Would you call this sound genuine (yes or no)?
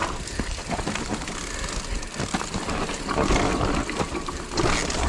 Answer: yes